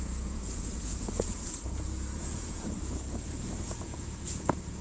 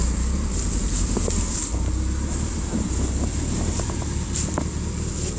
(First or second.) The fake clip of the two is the first